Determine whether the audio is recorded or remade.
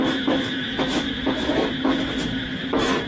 remade